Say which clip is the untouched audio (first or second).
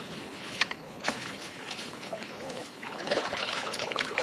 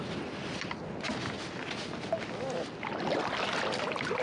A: second